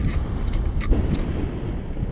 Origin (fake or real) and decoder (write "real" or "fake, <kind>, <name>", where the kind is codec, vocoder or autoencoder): real